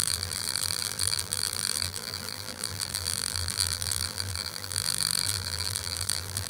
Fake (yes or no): yes